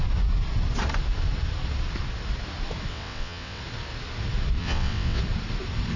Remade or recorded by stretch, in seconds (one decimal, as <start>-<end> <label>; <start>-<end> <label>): 0.0-2.9 recorded; 2.9-3.6 remade; 3.6-4.6 recorded; 4.6-5.2 remade; 5.2-6.0 recorded